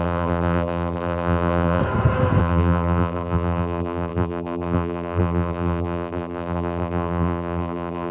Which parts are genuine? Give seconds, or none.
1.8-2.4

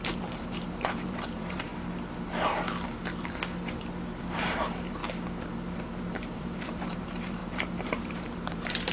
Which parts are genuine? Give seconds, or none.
1.7-4.2; 5.0-6.0

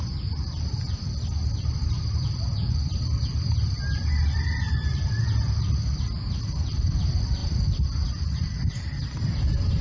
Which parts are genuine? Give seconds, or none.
5.8-6.5

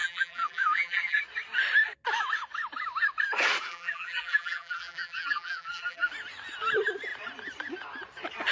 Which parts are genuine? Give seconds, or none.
1.2-3.7; 6.1-8.5

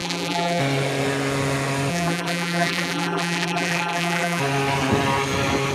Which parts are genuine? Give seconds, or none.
0.6-1.9; 4.4-5.7

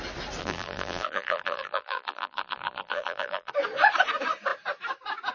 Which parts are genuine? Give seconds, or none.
0.0-0.4; 3.5-5.3

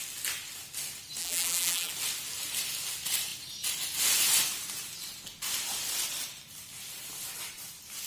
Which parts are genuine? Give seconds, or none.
0.0-1.2; 1.9-8.1